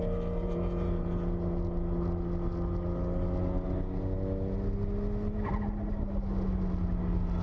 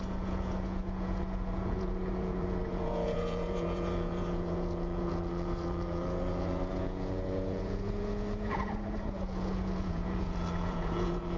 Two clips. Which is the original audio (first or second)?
first